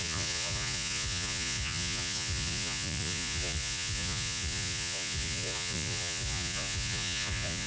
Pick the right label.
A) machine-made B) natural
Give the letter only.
A